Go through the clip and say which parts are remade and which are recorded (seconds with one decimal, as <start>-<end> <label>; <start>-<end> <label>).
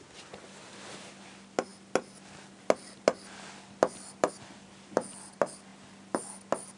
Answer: 0.0-6.8 recorded